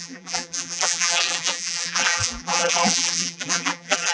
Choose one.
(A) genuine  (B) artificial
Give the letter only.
B